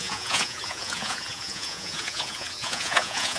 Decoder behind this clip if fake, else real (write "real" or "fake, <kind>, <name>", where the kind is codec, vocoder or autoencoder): fake, vocoder, Vocos